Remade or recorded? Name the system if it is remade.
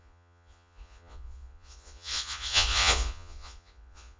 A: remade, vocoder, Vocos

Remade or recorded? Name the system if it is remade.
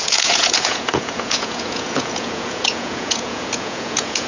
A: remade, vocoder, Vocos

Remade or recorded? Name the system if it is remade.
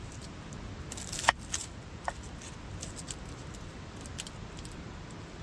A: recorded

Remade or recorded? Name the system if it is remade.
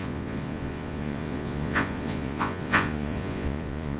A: remade, vocoder, Vocos